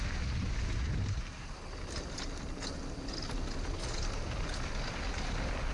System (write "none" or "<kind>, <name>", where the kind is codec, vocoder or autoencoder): none